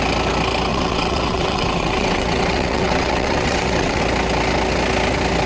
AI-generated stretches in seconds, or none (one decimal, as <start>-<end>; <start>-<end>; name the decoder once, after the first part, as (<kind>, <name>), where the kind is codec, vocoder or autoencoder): 0.7-4.0 (vocoder, WaveNeXt)